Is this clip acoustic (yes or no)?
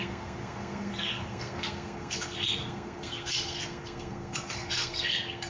no